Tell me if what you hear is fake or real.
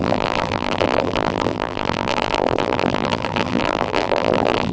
fake